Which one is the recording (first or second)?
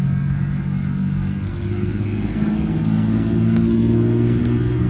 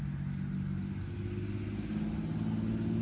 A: second